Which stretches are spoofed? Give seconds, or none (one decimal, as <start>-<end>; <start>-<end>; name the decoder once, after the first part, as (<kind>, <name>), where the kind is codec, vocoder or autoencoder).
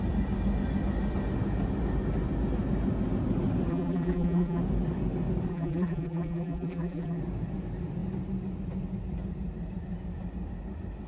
3.7-4.6 (vocoder, BigVGAN v2); 5.5-7.2